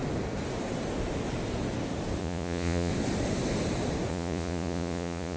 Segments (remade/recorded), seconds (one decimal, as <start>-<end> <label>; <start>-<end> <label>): 0.0-2.2 recorded; 2.2-2.9 remade; 2.9-4.1 recorded; 4.1-5.4 remade